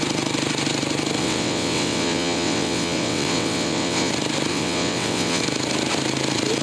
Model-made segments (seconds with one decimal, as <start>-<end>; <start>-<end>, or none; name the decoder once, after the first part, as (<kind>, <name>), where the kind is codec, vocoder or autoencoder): 1.2-4.1 (vocoder, WaveNeXt); 4.5-5.4